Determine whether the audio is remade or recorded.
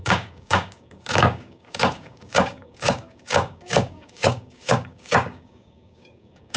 remade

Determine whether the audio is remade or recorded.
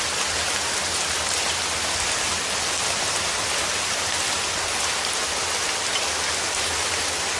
recorded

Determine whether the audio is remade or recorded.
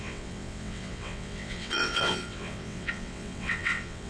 remade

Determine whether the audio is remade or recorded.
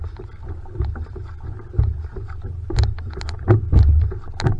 recorded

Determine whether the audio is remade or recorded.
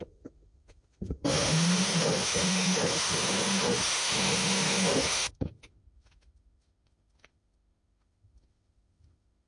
remade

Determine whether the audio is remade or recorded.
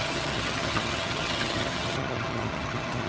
remade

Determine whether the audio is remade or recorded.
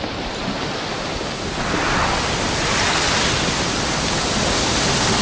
recorded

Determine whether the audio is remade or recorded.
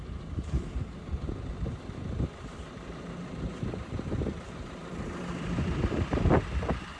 remade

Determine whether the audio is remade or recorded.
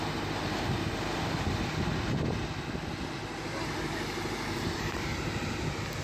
recorded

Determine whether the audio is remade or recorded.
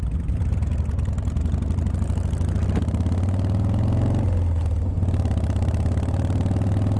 recorded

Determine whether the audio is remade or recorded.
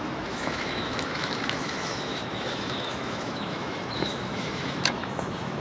remade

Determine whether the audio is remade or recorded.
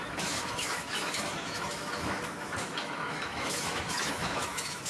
remade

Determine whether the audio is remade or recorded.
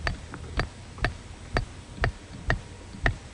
recorded